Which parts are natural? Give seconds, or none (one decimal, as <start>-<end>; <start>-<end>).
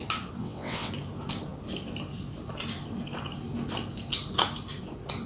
0.0-0.4; 0.9-5.3